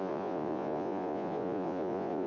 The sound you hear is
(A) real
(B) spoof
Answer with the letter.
B